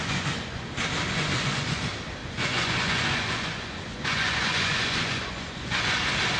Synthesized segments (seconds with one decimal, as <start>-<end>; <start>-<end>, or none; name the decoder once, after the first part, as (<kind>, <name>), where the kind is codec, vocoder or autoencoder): 0.0-0.7 (vocoder, Vocos); 1.1-1.8; 2.2-6.0